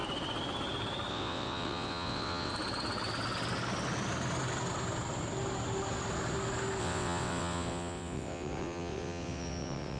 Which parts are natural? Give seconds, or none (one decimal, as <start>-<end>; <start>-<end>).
0.0-1.1; 2.5-6.8